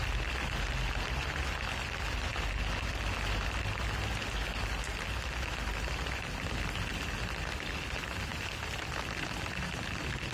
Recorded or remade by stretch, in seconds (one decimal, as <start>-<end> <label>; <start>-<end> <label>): 0.0-10.3 recorded